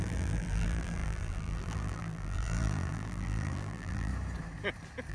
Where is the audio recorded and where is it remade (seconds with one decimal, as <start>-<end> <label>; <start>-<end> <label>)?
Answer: 0.0-4.1 remade; 4.1-5.1 recorded